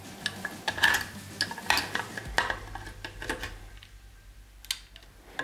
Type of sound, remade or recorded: recorded